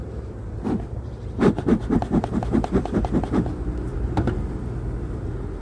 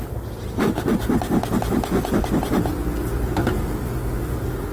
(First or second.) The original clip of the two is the second